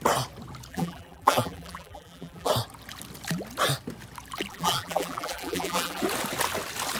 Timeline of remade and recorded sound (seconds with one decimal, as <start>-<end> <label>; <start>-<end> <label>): 0.0-0.7 recorded; 0.7-2.5 remade; 2.5-4.5 recorded; 4.5-6.0 remade; 6.0-7.0 recorded